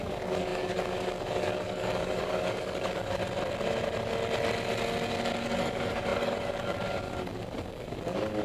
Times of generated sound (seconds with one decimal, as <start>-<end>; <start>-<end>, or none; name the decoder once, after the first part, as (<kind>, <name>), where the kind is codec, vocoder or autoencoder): 0.0-3.2 (codec, DAC); 5.4-8.4